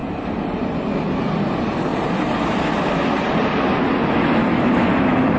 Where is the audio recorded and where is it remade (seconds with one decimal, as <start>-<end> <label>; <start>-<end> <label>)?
0.0-5.4 recorded